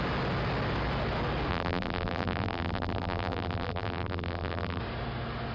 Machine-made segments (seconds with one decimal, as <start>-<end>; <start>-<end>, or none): 1.5-4.8